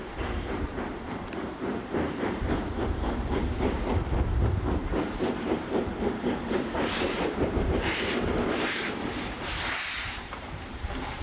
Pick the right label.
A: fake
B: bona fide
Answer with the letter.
A